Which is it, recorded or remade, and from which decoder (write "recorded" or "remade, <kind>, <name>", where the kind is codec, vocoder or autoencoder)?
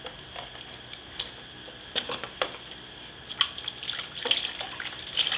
recorded